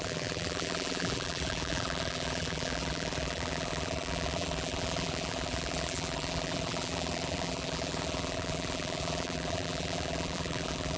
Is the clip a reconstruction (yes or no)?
yes